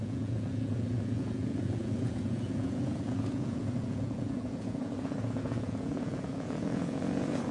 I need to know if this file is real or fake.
fake